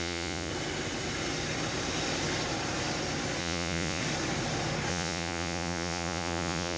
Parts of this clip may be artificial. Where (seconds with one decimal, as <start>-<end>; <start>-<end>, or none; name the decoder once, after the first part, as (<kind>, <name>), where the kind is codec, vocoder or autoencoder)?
0.0-0.5 (vocoder, Vocos); 3.4-4.0; 4.9-6.8